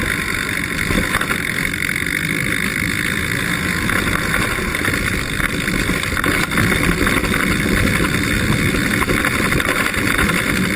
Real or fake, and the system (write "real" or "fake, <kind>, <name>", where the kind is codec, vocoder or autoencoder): real